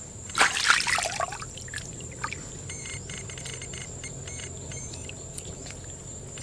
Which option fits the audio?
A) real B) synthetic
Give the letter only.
B